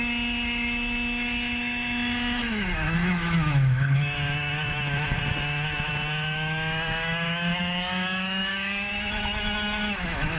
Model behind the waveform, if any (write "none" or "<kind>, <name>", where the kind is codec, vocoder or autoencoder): autoencoder, DAC-VAE